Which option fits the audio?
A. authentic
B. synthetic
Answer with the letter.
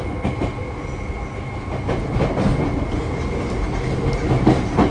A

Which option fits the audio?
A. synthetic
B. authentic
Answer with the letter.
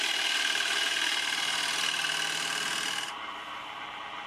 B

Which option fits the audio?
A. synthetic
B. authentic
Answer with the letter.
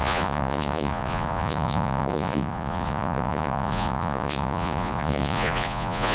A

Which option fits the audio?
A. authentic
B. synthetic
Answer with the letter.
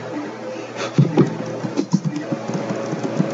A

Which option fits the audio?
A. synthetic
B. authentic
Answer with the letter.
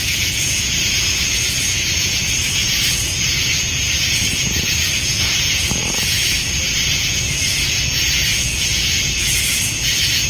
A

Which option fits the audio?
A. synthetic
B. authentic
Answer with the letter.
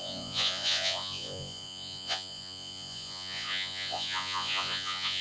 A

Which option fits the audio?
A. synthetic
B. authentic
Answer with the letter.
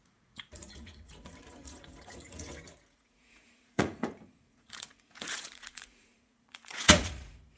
A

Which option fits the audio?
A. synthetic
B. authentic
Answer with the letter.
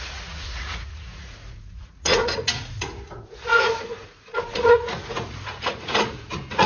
A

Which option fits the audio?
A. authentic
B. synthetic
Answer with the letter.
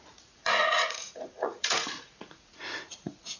B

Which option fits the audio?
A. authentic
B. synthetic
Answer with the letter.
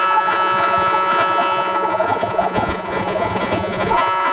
B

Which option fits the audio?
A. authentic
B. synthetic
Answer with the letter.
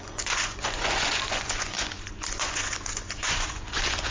B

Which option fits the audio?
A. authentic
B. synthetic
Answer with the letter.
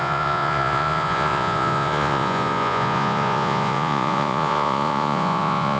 B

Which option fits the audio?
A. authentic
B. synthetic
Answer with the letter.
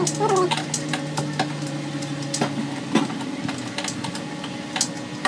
A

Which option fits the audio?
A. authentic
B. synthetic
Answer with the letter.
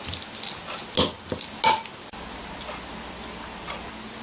A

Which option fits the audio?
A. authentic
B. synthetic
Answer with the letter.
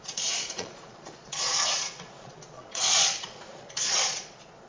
B